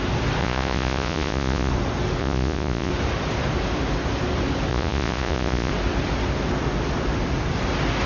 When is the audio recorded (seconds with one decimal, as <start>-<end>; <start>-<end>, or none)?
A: 0.0-0.4; 1.7-2.2; 2.9-4.7; 5.7-8.1